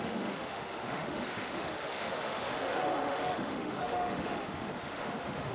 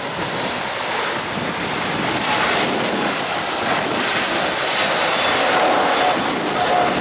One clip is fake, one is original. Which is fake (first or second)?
first